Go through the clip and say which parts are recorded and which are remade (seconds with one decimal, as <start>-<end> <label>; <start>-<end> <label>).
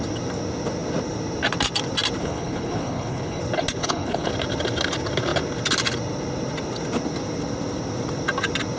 0.0-2.2 recorded; 2.2-3.4 remade; 3.4-3.8 recorded; 3.8-4.3 remade; 4.3-8.8 recorded